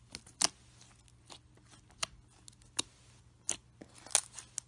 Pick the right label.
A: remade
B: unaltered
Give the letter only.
B